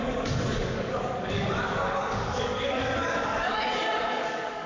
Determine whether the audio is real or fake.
fake